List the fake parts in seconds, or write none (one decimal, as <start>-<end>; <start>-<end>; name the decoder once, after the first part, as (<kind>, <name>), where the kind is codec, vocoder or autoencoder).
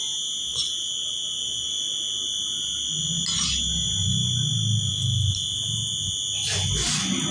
0.5-1.7 (vocoder, BigVGAN v2)